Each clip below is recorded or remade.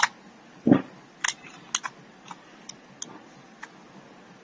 recorded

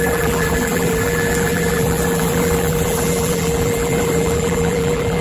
remade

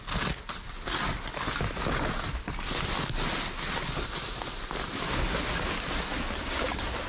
recorded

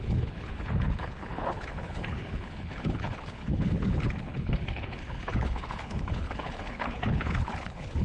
remade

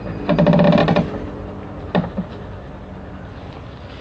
recorded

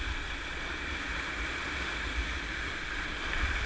recorded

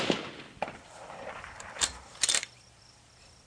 remade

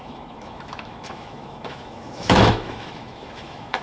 remade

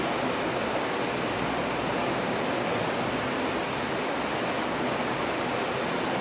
recorded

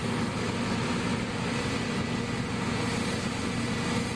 recorded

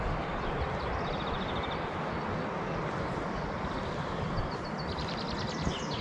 recorded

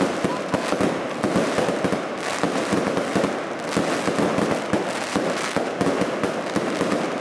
recorded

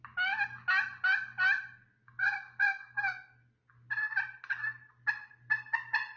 recorded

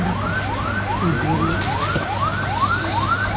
recorded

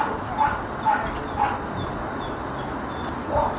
recorded